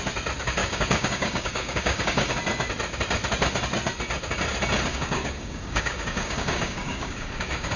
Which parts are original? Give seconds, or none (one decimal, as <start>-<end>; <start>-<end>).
0.0-0.6; 2.3-4.9

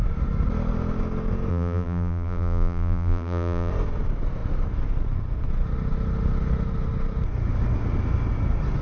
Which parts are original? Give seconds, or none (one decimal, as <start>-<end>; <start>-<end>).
0.0-1.5; 3.7-8.8